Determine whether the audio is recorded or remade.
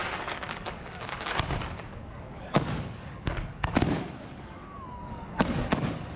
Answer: remade